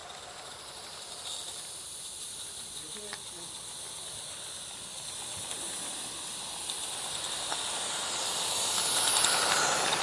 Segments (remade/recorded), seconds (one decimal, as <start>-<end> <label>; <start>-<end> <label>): 0.0-10.0 recorded